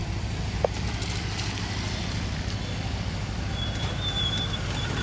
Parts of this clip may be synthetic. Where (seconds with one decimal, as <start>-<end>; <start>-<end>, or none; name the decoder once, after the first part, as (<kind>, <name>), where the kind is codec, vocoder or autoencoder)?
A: none